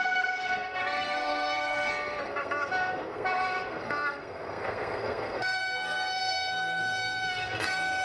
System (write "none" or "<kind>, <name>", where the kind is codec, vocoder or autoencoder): codec, SNAC